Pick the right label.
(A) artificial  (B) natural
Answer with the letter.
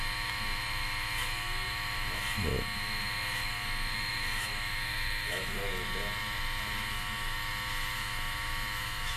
A